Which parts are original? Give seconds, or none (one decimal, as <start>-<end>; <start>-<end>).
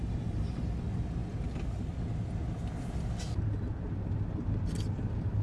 0.0-5.4